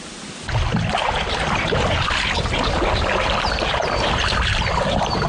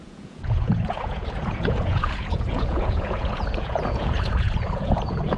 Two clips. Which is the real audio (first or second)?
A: first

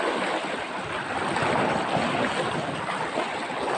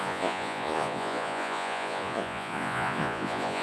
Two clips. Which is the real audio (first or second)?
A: first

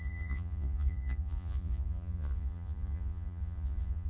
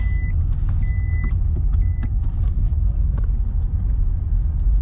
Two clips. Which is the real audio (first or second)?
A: second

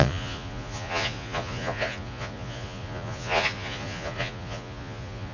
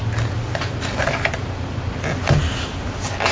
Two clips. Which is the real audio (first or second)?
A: second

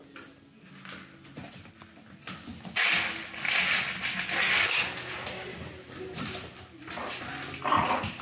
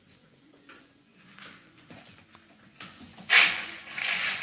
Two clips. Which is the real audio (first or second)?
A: first